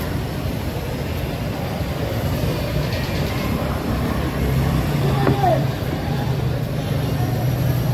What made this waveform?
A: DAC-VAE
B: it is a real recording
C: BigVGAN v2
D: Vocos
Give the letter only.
C